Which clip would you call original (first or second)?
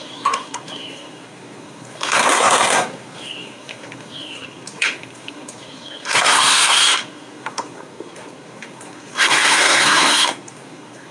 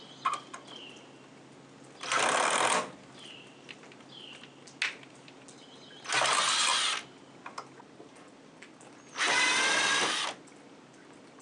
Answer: second